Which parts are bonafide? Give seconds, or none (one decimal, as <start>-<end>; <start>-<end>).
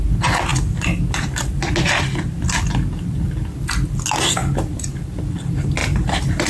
0.0-5.8